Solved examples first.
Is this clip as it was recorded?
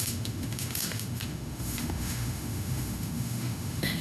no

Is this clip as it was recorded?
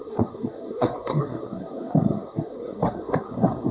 no